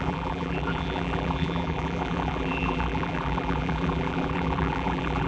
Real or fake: fake